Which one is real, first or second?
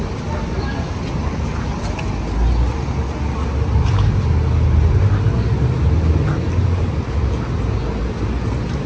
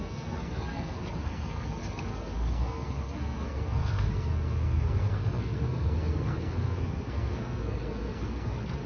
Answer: first